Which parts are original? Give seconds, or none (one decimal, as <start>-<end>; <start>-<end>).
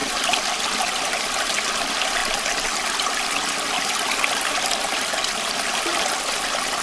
0.0-6.8